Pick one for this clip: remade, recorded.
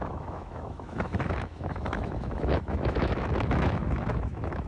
remade